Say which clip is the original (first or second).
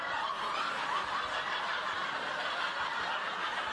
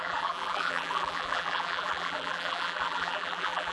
first